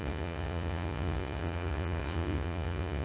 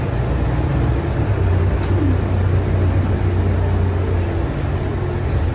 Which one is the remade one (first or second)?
first